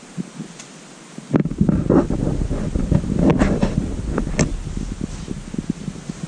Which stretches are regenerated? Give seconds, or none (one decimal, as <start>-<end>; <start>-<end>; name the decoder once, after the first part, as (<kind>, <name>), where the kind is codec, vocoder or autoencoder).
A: none